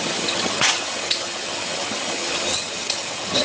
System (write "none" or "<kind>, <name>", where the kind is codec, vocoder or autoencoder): vocoder, HiFi-GAN